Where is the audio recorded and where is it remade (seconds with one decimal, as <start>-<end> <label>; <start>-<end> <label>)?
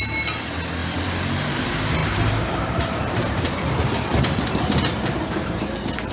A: 0.0-2.0 recorded; 2.0-3.4 remade; 3.4-6.1 recorded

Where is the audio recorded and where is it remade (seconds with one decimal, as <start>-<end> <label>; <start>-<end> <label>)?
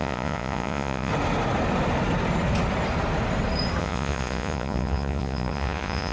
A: 0.0-1.1 remade; 1.1-3.8 recorded; 3.8-6.1 remade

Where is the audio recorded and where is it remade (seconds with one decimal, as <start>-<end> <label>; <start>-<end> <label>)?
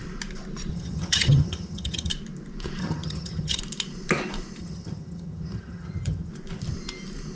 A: 0.0-0.7 recorded; 0.7-2.1 remade; 2.1-2.8 recorded; 2.8-3.6 remade; 3.6-4.6 recorded; 4.6-6.3 remade; 6.3-7.3 recorded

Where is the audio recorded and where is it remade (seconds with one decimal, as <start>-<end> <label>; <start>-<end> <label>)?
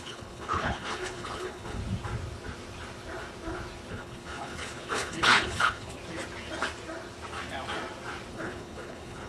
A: 0.0-1.8 remade; 1.8-3.9 recorded; 3.9-6.0 remade; 6.0-8.3 recorded; 8.3-9.3 remade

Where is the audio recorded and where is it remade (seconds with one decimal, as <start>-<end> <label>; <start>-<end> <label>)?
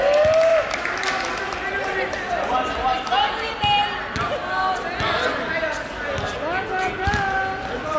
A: 0.0-8.0 recorded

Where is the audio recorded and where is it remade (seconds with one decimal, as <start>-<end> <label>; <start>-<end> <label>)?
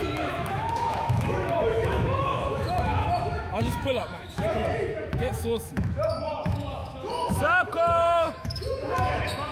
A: 0.0-9.5 remade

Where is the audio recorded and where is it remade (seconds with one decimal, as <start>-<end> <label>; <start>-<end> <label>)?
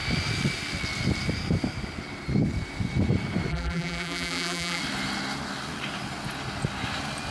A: 0.0-3.5 recorded; 3.5-4.8 remade; 4.8-7.3 recorded